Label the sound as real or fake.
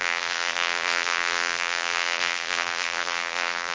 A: fake